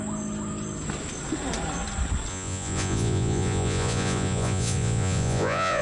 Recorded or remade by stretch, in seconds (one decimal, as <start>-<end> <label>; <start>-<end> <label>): 0.0-2.3 recorded; 2.3-5.8 remade